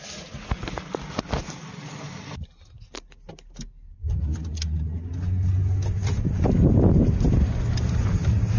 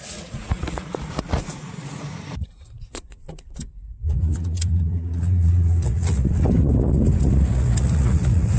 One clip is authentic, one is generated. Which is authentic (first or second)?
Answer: first